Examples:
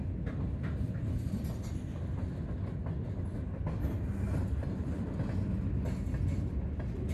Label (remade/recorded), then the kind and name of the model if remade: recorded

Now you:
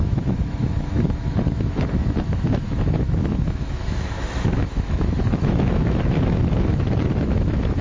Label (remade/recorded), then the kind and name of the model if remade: remade, autoencoder, DAC-VAE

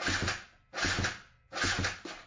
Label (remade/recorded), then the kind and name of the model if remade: recorded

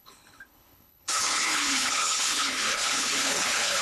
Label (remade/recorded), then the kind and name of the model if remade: remade, codec, HILCodec